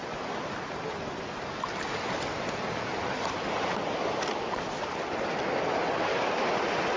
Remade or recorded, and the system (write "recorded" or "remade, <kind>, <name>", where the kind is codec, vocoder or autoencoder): recorded